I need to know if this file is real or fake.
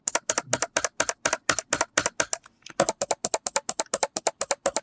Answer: real